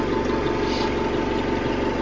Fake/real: real